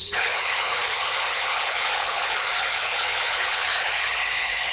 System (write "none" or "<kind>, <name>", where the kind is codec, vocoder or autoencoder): codec, HILCodec